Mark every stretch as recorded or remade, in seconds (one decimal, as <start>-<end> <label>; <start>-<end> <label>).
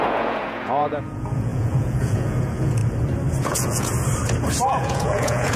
0.0-2.8 remade; 2.8-3.4 recorded; 3.4-3.9 remade; 3.9-4.7 recorded; 4.7-5.6 remade